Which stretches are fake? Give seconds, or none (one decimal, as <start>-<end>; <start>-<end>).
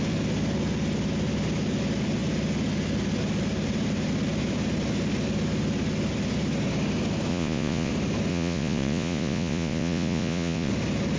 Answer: 7.3-7.9; 8.3-10.7